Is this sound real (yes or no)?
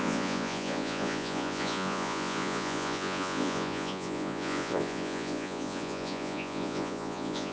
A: no